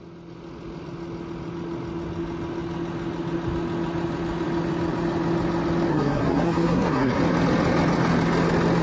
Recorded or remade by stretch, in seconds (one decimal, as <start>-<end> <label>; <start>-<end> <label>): 0.0-5.9 recorded; 5.9-7.2 remade; 7.2-8.8 recorded